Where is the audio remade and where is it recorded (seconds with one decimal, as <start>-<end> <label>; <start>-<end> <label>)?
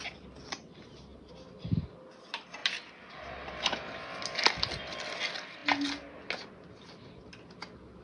0.0-8.0 recorded